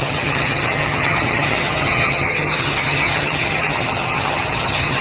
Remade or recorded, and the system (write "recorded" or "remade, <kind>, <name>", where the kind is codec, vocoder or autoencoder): remade, vocoder, HiFi-GAN